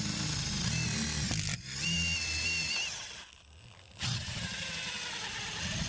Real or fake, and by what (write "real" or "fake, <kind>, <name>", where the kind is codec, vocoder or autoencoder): real